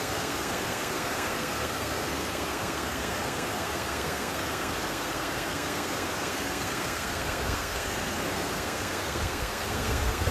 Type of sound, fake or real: fake